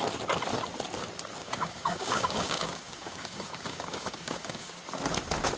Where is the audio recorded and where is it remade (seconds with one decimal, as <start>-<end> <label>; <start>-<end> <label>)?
0.0-1.4 recorded; 1.4-4.8 remade; 4.8-5.6 recorded

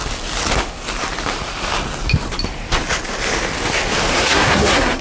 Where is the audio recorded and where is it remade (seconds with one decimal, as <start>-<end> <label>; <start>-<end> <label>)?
0.0-4.1 recorded; 4.1-5.0 remade

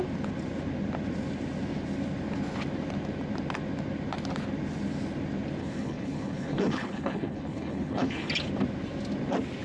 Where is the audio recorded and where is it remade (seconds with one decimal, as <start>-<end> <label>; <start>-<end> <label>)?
0.0-5.6 recorded; 5.6-8.3 remade; 8.3-9.6 recorded

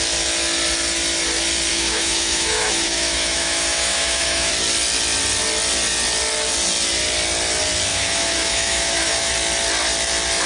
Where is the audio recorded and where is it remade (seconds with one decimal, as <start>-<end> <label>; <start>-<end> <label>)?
0.0-1.7 recorded; 1.7-4.5 remade; 4.5-7.9 recorded; 7.9-9.3 remade; 9.3-10.5 recorded

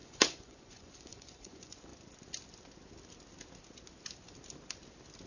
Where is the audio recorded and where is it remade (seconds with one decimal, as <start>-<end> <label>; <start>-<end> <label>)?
0.0-1.9 remade; 1.9-5.3 recorded

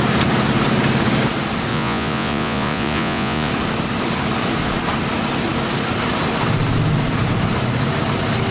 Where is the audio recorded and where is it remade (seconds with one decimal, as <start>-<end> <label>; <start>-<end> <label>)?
0.0-1.7 recorded; 1.7-3.5 remade; 3.5-8.5 recorded

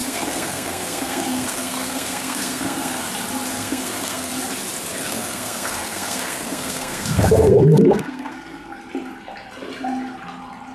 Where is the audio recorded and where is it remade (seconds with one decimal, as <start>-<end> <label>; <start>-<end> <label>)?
0.0-3.1 remade; 3.1-3.5 recorded; 3.5-4.3 remade; 4.3-4.9 recorded; 4.9-8.8 remade; 8.8-10.7 recorded

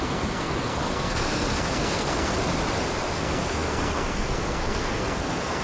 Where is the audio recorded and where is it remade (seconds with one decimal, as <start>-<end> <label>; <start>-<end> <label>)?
0.0-2.4 remade; 2.4-3.1 recorded; 3.1-5.6 remade